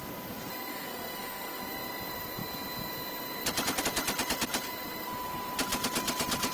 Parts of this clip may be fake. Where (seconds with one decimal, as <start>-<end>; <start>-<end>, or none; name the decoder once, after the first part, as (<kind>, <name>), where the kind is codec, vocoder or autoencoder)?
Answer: 0.7-1.6 (codec, SNAC)